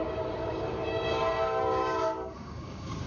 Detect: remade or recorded remade